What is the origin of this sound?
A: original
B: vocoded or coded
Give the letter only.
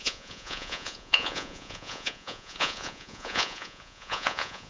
B